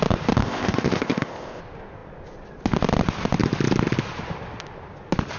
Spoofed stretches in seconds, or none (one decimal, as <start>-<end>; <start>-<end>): 0.4-1.6